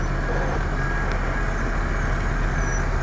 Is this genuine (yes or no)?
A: yes